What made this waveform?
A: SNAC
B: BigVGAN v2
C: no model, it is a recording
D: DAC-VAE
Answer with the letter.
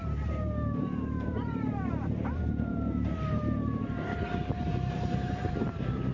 B